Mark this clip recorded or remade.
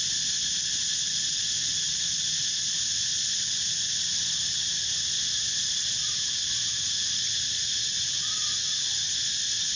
recorded